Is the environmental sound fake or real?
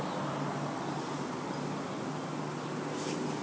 real